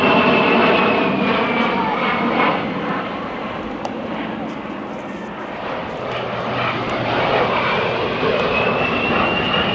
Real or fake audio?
real